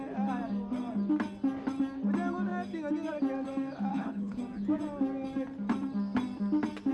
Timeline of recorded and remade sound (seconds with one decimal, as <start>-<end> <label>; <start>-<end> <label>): 0.0-3.9 recorded; 3.9-4.4 remade; 4.4-6.9 recorded